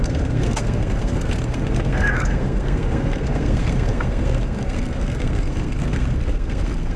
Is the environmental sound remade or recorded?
remade